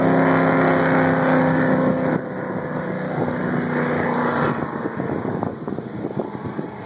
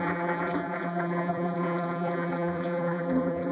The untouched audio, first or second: first